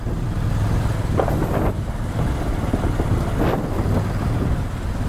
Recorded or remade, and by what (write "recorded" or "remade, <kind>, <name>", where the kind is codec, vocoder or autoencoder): recorded